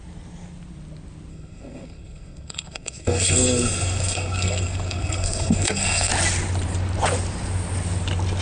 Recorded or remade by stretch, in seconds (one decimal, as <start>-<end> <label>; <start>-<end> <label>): 0.0-1.3 recorded; 1.3-6.1 remade; 6.1-8.4 recorded